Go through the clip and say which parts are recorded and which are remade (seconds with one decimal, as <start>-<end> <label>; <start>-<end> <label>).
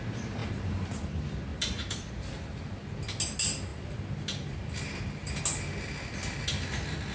0.0-0.4 recorded; 0.4-1.1 remade; 1.1-1.5 recorded; 1.5-2.7 remade; 2.7-3.7 recorded; 3.7-5.4 remade; 5.4-7.1 recorded